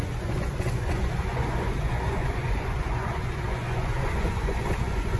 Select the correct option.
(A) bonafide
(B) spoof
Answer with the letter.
B